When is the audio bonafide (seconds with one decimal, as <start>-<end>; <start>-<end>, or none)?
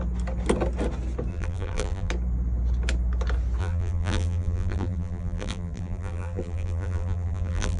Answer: 0.0-1.3; 2.1-3.6